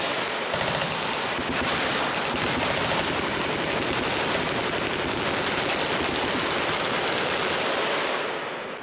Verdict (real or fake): real